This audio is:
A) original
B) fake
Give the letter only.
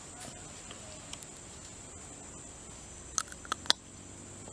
A